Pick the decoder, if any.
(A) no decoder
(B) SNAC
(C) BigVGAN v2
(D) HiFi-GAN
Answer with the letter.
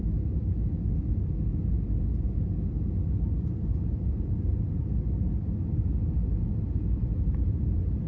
A